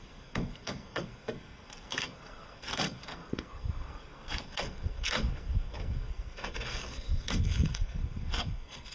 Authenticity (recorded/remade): remade